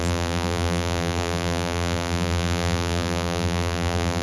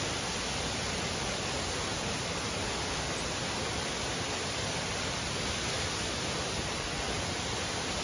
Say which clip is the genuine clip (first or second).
second